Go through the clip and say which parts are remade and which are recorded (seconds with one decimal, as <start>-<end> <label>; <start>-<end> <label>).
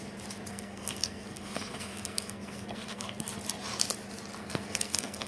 0.0-0.5 recorded; 0.5-3.3 remade; 3.3-4.4 recorded; 4.4-5.3 remade